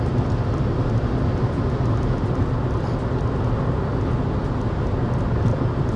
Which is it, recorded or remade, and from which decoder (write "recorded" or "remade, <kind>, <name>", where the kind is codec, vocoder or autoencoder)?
recorded